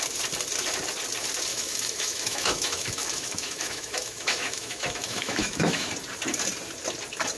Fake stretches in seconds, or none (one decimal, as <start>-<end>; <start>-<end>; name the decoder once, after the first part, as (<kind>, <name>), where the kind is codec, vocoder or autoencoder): 1.5-5.9 (autoencoder, DAC-VAE)